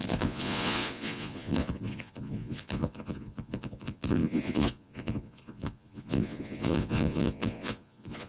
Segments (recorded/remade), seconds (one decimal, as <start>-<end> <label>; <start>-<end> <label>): 0.0-8.3 remade